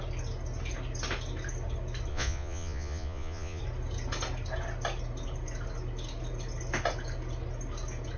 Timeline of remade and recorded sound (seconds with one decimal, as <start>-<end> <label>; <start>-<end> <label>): 0.0-2.1 recorded; 2.1-3.6 remade; 3.6-8.2 recorded